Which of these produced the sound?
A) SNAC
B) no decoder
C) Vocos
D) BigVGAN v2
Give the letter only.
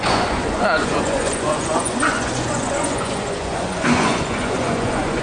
C